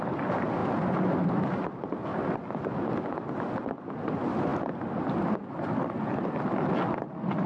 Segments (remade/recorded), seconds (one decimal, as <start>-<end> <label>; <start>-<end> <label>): 0.0-7.5 recorded